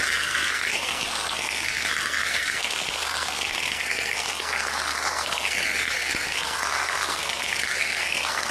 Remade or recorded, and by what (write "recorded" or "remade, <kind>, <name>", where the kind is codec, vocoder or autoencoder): remade, codec, SNAC